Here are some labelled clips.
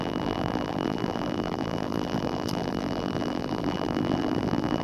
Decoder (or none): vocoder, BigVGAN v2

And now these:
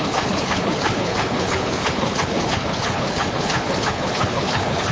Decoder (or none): codec, HILCodec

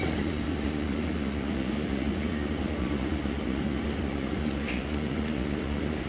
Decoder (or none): vocoder, Vocos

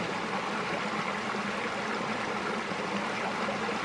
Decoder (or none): none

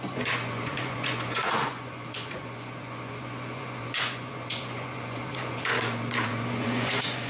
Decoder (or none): vocoder, Vocos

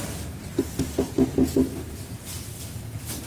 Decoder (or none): none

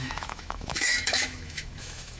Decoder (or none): autoencoder, DAC-VAE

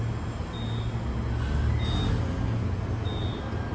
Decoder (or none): none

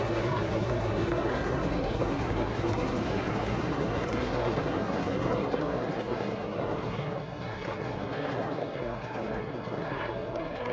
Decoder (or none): codec, SNAC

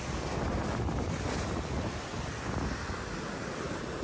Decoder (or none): none